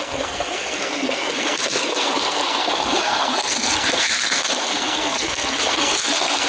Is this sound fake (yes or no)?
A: yes